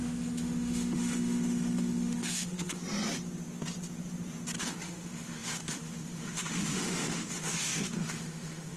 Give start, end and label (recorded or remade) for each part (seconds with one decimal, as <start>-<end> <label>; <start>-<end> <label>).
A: 0.0-2.8 remade; 2.8-4.6 recorded; 4.6-8.8 remade